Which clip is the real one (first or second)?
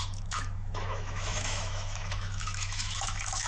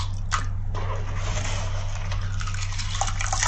second